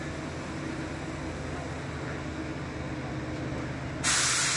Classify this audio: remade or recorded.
recorded